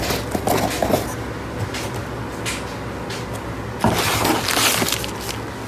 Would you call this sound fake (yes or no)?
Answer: no